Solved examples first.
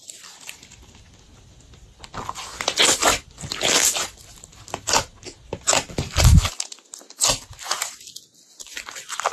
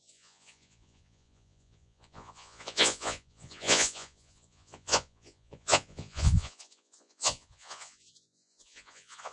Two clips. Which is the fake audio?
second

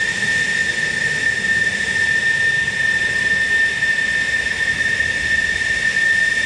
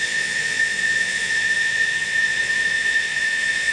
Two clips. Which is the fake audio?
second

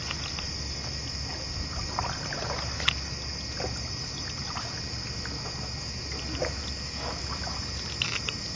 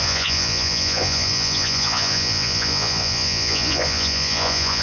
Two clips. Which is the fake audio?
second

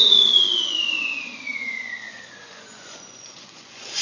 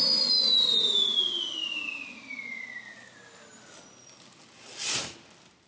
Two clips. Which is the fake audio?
first